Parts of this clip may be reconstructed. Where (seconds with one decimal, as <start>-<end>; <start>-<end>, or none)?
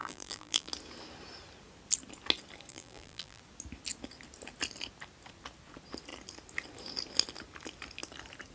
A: 0.0-0.7; 2.7-3.4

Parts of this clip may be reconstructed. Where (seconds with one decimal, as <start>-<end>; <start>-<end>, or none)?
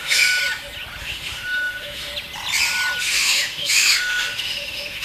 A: 0.0-0.4; 1.0-2.1; 3.0-5.0